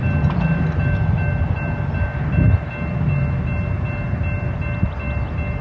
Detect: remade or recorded recorded